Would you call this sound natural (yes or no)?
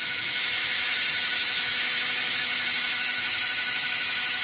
no